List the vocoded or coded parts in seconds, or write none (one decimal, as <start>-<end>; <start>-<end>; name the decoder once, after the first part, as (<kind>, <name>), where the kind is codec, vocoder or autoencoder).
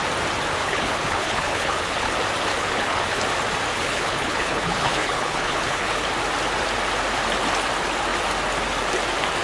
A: 0.6-2.1 (codec, HILCodec); 2.5-3.2; 3.7-6.0